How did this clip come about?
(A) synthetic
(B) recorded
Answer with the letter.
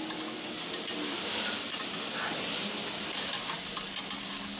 B